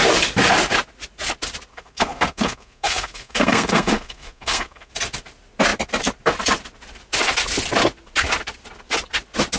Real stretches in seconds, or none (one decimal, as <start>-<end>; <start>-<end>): 0.0-1.7; 4.9-9.6